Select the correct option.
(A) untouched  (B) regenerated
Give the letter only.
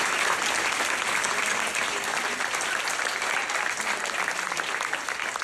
A